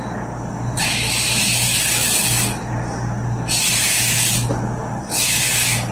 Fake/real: real